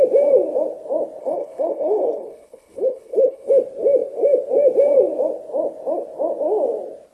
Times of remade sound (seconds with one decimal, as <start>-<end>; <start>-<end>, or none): 1.2-3.5